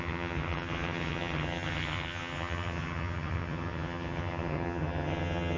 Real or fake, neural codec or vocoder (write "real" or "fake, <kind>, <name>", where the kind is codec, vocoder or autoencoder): fake, vocoder, HiFi-GAN